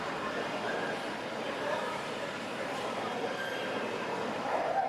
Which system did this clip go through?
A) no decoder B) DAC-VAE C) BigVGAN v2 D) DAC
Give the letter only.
C